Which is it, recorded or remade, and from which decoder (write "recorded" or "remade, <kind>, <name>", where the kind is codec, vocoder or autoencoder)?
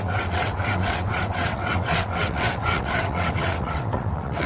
remade, vocoder, WaveNeXt